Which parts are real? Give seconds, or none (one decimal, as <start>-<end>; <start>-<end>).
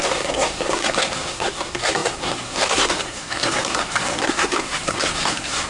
none